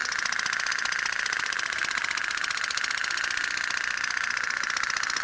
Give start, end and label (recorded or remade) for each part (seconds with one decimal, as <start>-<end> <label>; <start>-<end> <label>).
0.0-5.2 recorded